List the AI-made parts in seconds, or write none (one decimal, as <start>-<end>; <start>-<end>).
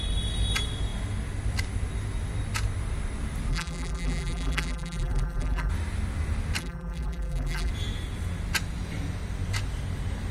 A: 3.5-5.7; 6.6-7.7